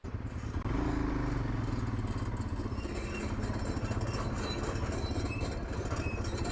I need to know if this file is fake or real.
real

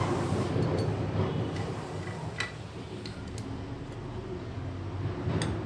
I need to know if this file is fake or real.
real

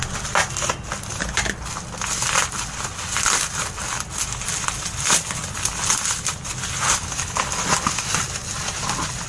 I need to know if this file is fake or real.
real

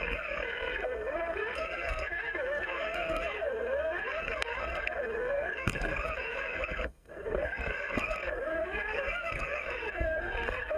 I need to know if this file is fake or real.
fake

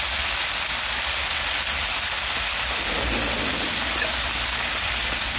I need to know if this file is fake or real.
real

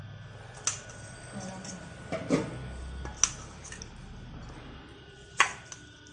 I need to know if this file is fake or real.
real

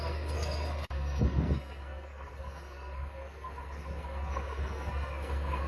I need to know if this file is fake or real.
fake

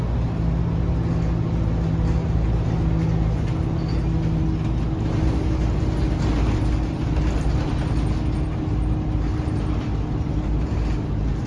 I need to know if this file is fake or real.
real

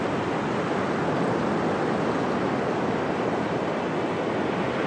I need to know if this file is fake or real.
real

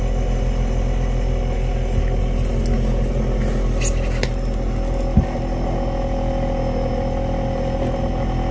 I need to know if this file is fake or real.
real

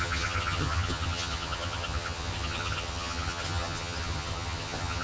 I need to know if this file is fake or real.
fake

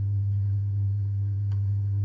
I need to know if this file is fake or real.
fake